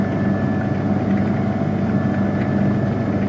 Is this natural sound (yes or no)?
yes